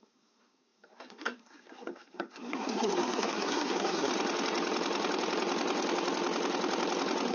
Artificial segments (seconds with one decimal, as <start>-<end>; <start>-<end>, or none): 0.0-4.1